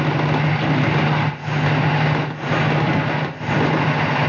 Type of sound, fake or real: real